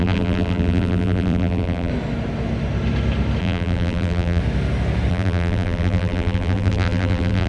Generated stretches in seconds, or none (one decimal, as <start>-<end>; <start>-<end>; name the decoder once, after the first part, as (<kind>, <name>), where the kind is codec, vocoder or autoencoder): 0.0-1.9 (vocoder, BigVGAN v2); 3.4-4.4; 5.1-7.5